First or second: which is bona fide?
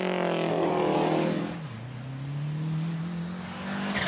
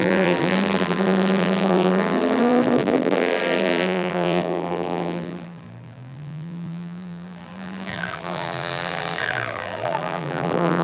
first